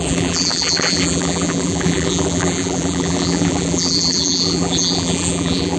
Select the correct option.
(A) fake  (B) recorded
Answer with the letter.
A